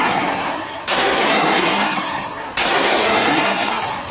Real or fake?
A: fake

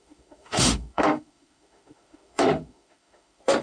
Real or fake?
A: fake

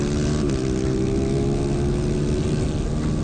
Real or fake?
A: real